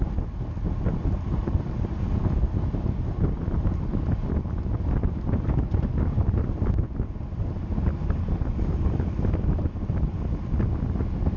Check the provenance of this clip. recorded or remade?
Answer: recorded